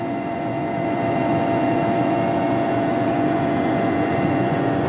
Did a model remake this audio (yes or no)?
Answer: yes